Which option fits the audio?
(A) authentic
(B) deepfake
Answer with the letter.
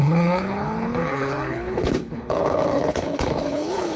B